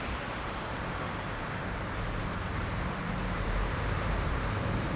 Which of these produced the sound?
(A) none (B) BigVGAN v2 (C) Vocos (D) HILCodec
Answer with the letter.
B